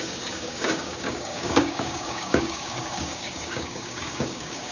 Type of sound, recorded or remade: remade